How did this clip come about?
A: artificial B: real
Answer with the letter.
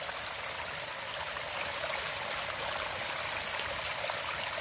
B